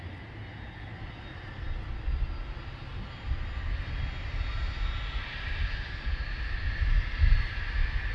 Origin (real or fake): real